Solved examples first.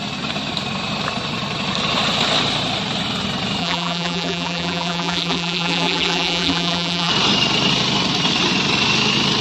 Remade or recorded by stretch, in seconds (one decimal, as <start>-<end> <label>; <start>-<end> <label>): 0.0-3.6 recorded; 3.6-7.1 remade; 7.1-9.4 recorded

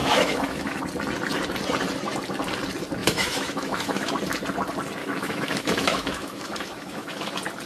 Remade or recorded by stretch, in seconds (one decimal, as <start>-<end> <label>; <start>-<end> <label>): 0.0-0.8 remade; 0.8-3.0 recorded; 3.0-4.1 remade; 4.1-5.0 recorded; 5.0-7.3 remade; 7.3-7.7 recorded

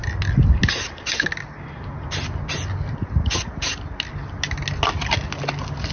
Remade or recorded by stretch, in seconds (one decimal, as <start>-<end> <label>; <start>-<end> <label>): 0.0-5.9 recorded

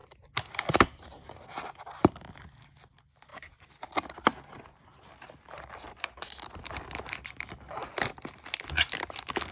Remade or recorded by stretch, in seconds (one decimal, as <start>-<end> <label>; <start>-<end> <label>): 0.0-3.3 recorded; 3.3-7.8 remade; 7.8-9.5 recorded

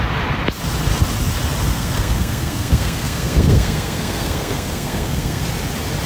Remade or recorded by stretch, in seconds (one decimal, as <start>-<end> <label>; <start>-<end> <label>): 0.0-1.7 recorded; 1.7-5.4 remade; 5.4-6.1 recorded

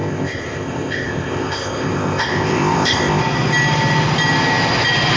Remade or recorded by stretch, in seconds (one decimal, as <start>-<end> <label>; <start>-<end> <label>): 0.0-3.2 remade; 3.2-5.2 recorded

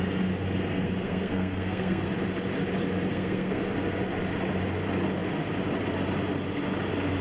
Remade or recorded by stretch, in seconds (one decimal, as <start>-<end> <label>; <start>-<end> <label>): 0.0-0.7 recorded; 0.7-2.1 remade; 2.1-3.1 recorded; 3.1-3.6 remade; 3.6-7.2 recorded

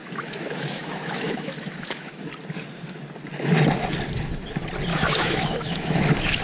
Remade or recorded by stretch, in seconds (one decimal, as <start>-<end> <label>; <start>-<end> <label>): 0.0-2.3 remade; 2.3-4.9 recorded; 4.9-6.4 remade